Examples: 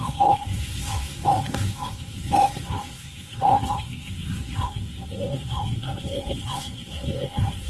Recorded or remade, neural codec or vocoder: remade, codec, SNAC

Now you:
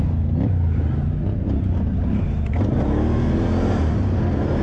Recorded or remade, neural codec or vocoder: recorded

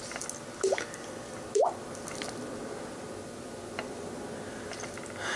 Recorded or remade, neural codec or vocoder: recorded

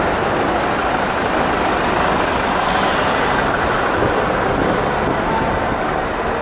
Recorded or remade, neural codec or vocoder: recorded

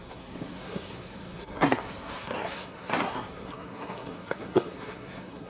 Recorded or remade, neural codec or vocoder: remade, codec, SNAC